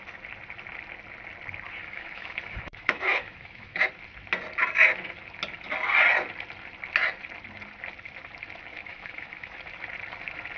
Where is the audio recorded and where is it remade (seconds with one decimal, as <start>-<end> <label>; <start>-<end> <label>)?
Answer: 0.0-1.8 recorded; 1.8-3.9 remade; 3.9-8.7 recorded; 8.7-9.6 remade; 9.6-10.6 recorded